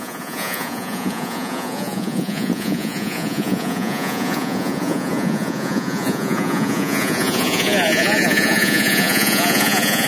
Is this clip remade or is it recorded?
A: remade